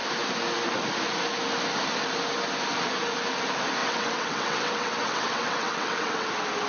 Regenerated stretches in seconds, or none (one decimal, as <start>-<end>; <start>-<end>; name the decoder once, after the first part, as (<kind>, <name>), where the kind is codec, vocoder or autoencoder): 3.8-6.3 (vocoder, WaveNeXt)